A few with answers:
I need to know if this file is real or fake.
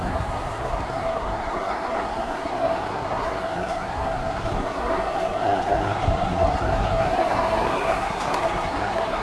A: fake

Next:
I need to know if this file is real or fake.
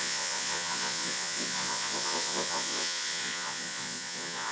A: fake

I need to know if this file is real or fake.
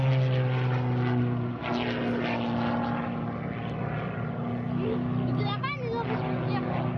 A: real